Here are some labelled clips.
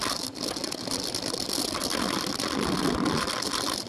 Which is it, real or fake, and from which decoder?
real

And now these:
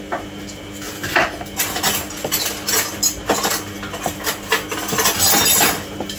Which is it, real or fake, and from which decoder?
real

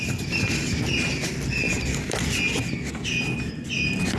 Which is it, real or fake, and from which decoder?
real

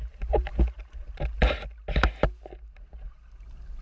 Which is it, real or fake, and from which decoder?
real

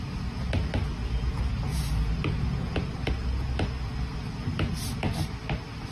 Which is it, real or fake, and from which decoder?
real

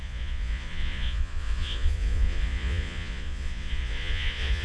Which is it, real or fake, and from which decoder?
fake, vocoder, Vocos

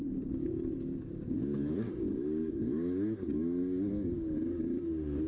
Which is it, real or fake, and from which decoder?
fake, codec, DAC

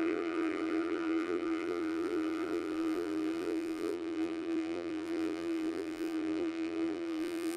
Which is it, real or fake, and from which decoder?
fake, vocoder, BigVGAN v2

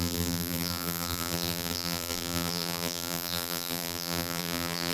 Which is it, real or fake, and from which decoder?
fake, vocoder, BigVGAN v2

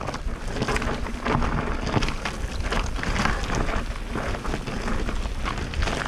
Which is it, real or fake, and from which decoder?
real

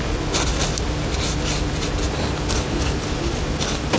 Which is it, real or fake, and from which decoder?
real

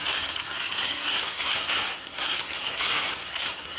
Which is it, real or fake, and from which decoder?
fake, codec, SNAC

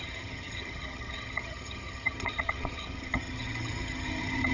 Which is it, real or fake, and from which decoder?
fake, vocoder, HiFi-GAN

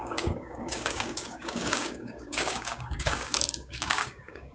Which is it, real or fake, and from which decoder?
fake, codec, DAC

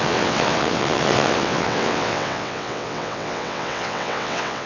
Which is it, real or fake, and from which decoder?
fake, vocoder, WaveNeXt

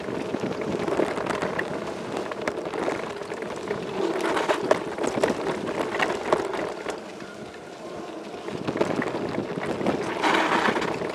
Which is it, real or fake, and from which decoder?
real